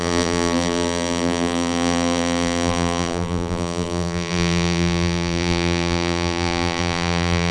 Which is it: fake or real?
fake